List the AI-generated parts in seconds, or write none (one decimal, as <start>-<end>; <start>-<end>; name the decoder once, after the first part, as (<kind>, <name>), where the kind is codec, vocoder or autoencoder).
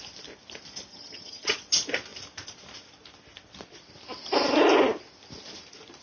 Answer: 0.9-1.6 (vocoder, HiFi-GAN)